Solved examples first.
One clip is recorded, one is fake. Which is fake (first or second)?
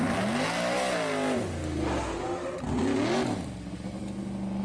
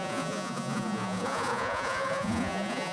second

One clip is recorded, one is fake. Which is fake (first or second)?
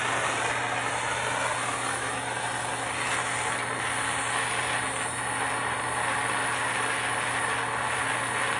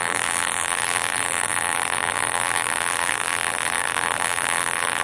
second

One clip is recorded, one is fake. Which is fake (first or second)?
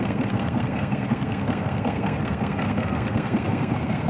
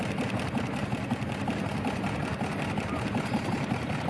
first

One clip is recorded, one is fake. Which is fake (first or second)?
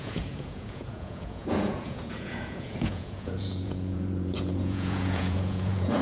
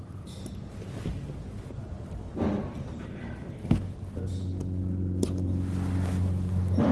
first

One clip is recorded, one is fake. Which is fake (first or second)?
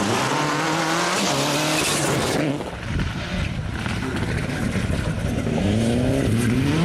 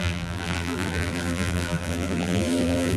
second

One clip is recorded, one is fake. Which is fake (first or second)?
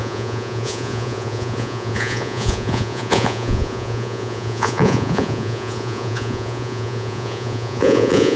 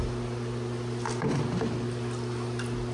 first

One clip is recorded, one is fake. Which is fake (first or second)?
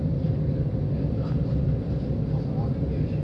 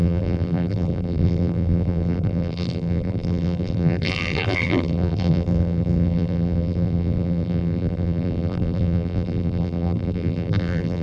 second